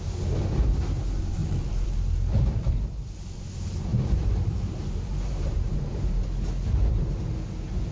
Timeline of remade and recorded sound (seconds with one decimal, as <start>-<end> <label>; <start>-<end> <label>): 0.0-1.4 recorded; 1.4-2.7 remade; 2.7-3.9 recorded; 3.9-6.1 remade; 6.1-7.9 recorded